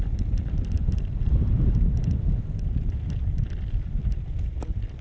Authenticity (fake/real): real